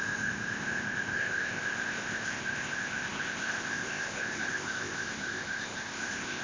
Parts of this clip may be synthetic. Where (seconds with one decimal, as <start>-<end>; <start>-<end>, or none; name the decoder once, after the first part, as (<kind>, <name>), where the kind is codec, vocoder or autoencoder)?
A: 0.0-6.4 (codec, ZipCodec)